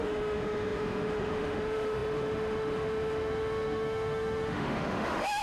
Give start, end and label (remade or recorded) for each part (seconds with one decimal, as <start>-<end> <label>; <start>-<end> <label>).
0.0-5.4 remade